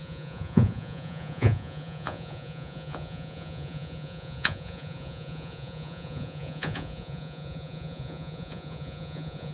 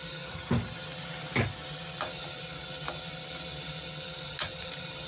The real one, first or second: second